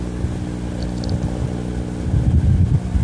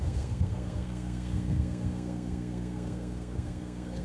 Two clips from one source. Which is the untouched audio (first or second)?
first